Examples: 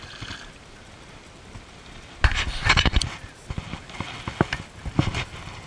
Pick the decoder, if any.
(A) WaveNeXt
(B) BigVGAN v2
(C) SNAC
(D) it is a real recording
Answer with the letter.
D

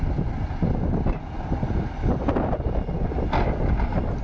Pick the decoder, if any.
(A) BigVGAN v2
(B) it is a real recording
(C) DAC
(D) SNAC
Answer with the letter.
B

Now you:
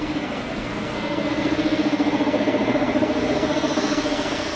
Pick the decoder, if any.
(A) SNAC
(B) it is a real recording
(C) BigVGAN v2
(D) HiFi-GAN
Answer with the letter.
A